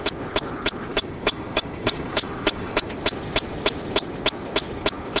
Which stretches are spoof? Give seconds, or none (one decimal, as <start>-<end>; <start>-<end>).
0.9-2.9